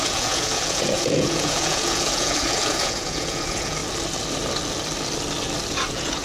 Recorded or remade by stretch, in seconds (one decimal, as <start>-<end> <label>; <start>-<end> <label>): 0.0-3.8 remade; 3.8-5.7 recorded; 5.7-6.2 remade